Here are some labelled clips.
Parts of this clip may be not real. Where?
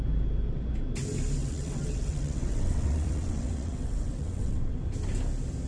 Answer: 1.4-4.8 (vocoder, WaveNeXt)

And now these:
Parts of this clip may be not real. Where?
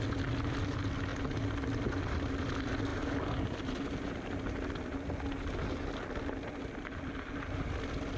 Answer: none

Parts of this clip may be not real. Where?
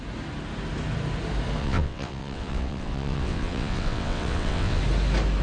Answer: 1.6-4.8 (vocoder, WaveNeXt)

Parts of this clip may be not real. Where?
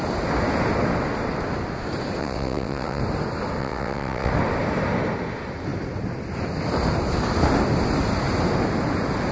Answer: 2.2-3.0 (vocoder, WaveNeXt); 3.6-4.3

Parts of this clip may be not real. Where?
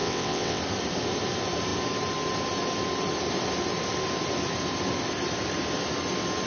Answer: 0.0-0.6 (vocoder, WaveNeXt)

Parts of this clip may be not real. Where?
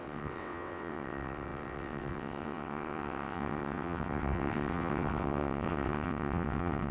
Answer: 0.0-6.9 (vocoder, WaveNeXt)